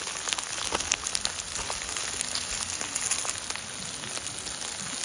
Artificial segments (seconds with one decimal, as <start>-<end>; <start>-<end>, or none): none